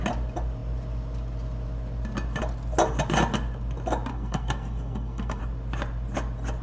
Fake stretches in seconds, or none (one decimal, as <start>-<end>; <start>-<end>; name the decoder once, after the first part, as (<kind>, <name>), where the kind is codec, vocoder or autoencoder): 4.1-5.4 (codec, SNAC)